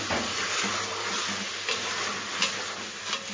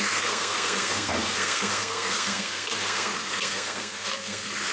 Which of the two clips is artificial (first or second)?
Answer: second